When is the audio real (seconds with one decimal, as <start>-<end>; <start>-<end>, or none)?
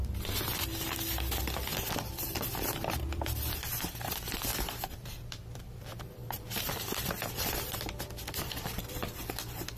none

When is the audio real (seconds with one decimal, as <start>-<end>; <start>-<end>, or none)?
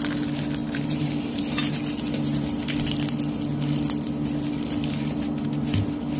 0.0-0.6; 1.4-6.2